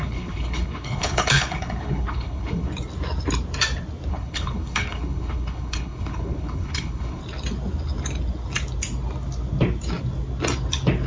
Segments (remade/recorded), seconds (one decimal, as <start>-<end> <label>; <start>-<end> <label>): 0.0-2.7 remade; 2.7-4.1 recorded; 4.1-7.2 remade; 7.2-11.1 recorded